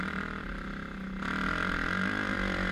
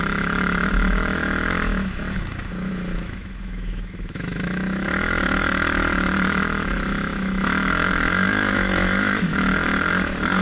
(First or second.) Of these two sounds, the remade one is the second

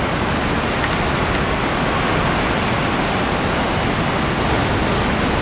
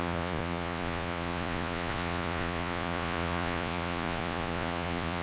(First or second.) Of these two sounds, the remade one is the second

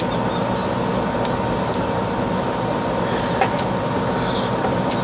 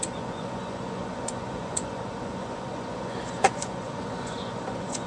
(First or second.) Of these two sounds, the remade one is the second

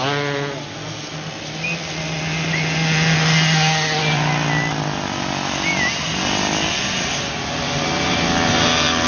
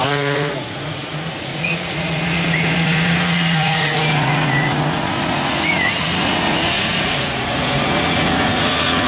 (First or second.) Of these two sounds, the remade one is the second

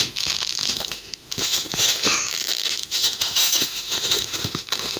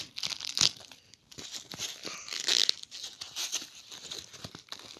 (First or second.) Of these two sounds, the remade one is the first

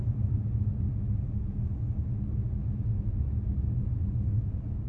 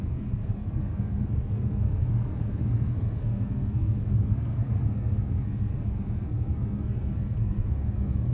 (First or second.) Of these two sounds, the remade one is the second